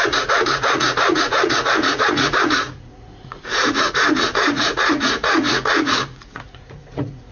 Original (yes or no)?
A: no